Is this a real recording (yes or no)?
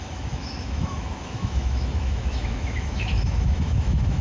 no